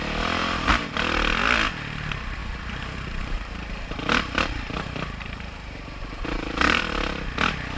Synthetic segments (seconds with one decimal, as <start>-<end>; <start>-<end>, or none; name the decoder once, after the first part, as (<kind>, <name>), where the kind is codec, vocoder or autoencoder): 0.4-1.0 (vocoder, BigVGAN v2); 2.4-6.8